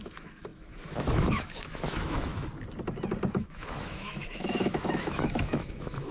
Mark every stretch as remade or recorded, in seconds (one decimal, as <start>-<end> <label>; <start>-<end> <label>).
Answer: 0.0-2.3 remade; 2.3-3.3 recorded; 3.3-6.1 remade